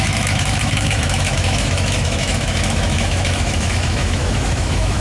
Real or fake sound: fake